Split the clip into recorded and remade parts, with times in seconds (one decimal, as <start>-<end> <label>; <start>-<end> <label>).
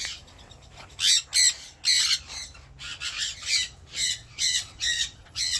0.0-4.0 recorded; 4.0-5.6 remade